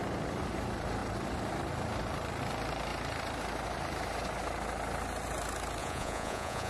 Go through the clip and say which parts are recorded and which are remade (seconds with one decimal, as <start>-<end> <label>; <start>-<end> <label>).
0.0-5.8 recorded; 5.8-6.7 remade